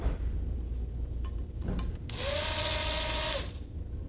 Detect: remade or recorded recorded